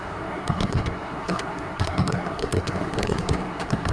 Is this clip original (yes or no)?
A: no